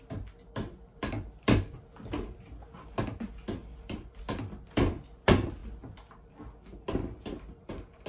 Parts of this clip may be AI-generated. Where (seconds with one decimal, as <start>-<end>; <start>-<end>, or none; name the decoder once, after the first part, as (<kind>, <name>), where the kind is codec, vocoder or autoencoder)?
1.0-1.8 (vocoder, BigVGAN v2); 3.6-4.2